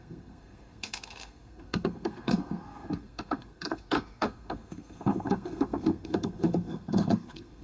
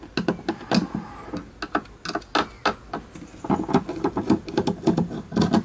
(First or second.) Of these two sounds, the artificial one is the first